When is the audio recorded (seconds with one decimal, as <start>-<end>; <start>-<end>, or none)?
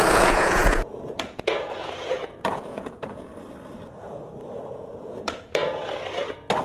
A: 3.3-4.7; 5.8-6.6